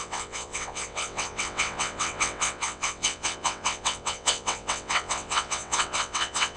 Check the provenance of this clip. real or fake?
fake